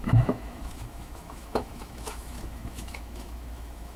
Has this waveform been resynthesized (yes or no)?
yes